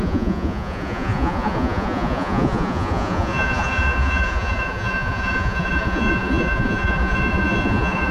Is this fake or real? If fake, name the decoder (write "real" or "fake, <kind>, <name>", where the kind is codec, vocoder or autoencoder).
fake, vocoder, Vocos